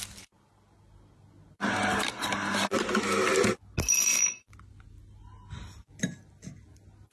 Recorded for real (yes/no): yes